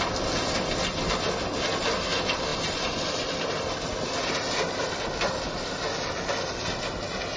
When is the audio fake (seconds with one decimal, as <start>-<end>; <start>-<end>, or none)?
none